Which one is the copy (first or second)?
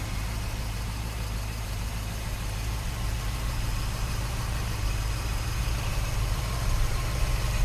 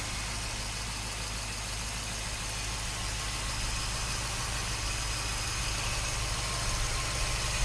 first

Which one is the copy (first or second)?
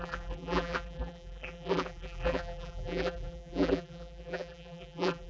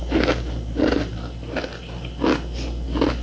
first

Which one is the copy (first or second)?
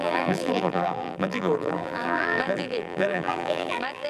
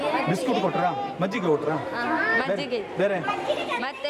first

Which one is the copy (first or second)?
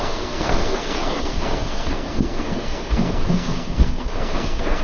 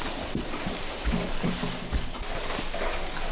first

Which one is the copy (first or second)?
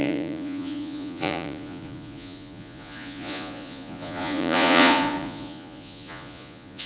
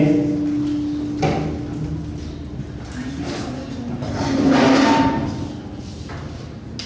first